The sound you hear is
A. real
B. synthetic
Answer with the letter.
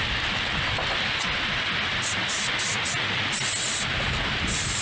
A